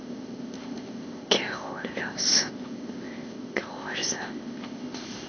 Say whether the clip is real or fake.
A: fake